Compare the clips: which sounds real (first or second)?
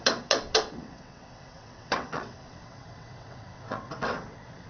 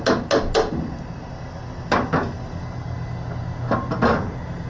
second